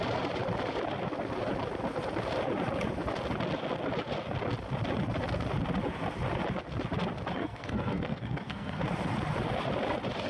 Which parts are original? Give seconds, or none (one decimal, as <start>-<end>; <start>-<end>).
0.0-7.4; 8.8-10.3